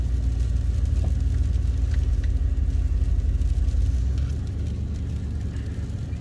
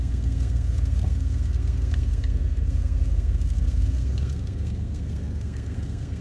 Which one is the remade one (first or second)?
second